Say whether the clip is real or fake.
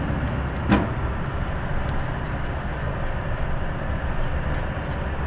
real